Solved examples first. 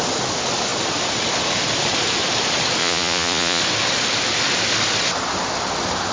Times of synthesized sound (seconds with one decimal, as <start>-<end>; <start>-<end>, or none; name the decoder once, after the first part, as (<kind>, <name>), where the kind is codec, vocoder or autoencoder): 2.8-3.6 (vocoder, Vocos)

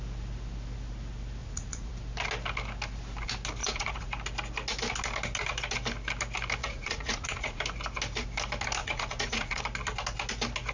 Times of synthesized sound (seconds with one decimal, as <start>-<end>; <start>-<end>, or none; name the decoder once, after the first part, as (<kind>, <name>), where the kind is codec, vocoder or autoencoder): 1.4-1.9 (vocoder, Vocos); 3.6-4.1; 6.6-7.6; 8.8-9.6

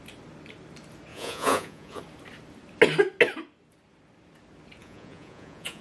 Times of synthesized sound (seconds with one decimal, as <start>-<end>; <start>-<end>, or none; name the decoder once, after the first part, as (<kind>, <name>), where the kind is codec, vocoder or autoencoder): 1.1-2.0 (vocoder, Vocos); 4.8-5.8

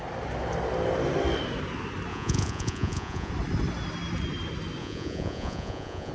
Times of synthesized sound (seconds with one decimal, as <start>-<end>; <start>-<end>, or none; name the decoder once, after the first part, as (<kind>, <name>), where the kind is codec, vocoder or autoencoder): 2.1-3.3 (vocoder, Vocos); 4.8-6.1

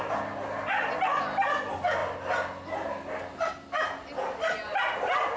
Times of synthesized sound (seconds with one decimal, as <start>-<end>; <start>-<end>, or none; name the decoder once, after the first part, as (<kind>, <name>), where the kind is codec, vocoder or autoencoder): none

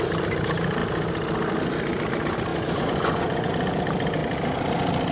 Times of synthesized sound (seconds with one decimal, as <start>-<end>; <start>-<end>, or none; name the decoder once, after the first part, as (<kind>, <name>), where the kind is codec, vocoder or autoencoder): 2.5-3.5 (vocoder, Vocos)